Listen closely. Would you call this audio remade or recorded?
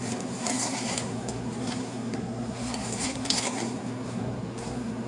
remade